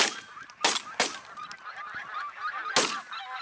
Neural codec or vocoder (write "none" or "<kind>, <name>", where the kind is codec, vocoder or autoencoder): none